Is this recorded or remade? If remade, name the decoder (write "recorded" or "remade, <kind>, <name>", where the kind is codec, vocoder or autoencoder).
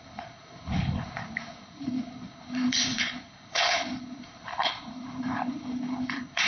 remade, codec, HILCodec